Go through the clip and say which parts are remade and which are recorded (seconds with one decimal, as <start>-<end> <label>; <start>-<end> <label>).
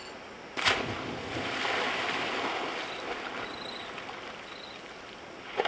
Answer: 0.0-5.7 recorded